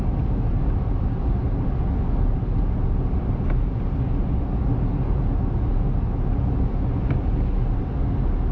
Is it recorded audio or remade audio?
recorded